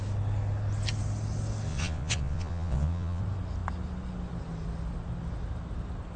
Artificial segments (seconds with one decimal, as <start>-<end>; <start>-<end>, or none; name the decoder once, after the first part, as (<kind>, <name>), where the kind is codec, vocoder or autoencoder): 1.7-3.2 (vocoder, Vocos)